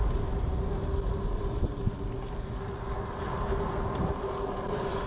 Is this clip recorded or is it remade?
recorded